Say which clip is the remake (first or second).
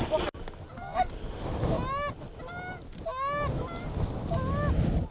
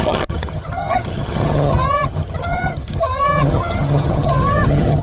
second